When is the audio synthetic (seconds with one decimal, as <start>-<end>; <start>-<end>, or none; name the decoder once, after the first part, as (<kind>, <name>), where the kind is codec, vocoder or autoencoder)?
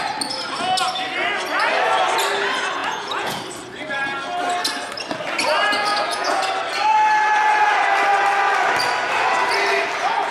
2.8-3.4 (vocoder, Vocos); 5.9-6.5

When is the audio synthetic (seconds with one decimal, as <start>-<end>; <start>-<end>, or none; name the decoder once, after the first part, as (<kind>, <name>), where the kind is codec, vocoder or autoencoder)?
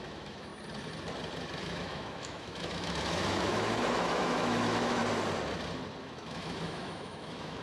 0.0-0.5 (autoencoder, DAC-VAE); 1.6-5.0; 6.0-7.6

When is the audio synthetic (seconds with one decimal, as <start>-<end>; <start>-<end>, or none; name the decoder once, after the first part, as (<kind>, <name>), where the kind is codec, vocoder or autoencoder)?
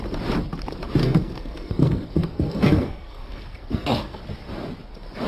1.0-4.2 (codec, SNAC)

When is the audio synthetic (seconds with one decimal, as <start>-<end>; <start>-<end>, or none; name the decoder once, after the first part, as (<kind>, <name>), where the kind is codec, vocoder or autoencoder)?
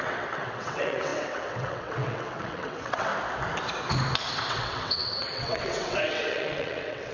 0.0-3.1 (vocoder, WaveNeXt); 4.5-7.1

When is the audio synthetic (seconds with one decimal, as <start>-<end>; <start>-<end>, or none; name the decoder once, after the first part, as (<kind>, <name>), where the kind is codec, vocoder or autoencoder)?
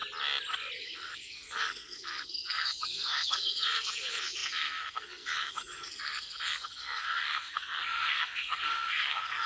0.8-9.5 (codec, SNAC)